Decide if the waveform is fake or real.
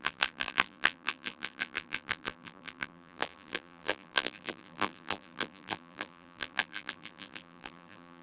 fake